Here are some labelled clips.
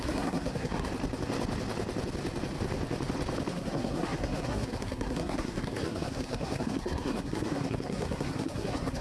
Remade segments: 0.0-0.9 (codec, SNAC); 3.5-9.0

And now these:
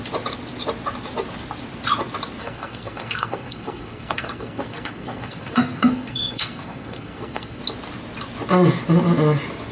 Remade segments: 2.4-7.6 (codec, SNAC)

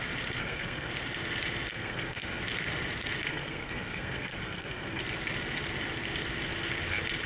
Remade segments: 0.4-0.9 (codec, SNAC); 1.7-2.4; 3.3-5.0

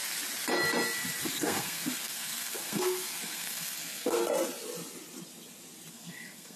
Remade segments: 1.3-4.2 (codec, SNAC); 5.9-6.6